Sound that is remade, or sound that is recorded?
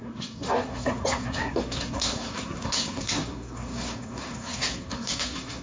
remade